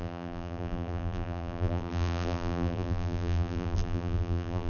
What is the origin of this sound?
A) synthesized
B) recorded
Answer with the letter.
A